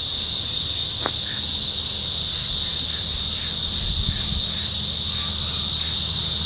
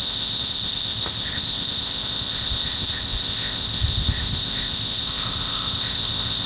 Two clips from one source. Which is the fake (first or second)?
second